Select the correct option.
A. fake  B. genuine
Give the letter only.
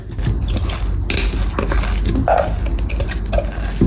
B